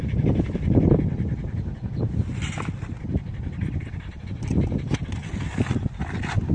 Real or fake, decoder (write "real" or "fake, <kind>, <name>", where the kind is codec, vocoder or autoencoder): real